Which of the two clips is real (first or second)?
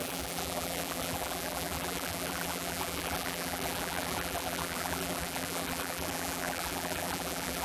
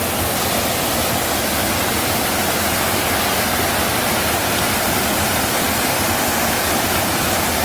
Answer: second